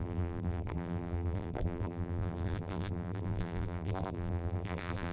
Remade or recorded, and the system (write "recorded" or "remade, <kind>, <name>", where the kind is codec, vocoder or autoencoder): remade, vocoder, BigVGAN v2